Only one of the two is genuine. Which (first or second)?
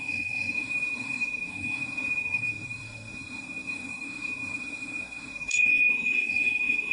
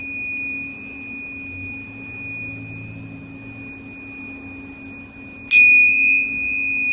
second